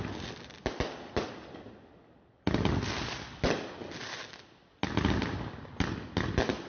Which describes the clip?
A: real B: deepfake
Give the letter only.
A